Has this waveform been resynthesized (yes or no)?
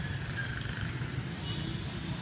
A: no